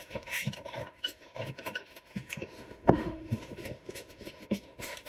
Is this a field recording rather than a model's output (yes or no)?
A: no